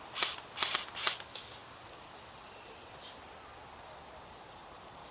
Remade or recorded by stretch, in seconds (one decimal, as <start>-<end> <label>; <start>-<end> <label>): 0.0-5.1 recorded